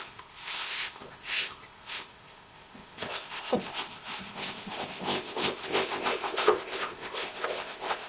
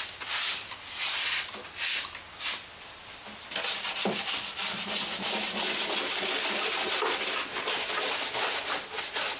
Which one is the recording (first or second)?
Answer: second